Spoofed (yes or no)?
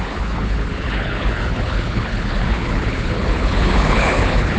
yes